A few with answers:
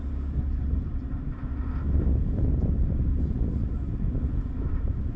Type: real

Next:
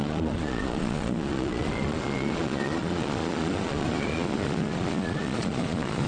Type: fake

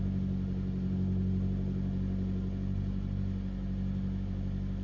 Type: real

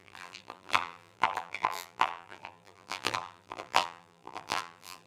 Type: fake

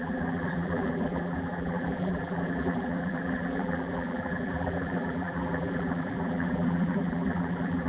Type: fake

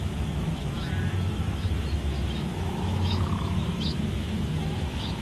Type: fake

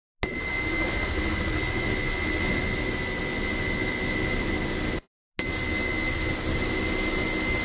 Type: real